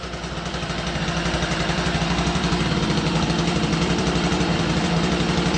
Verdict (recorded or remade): remade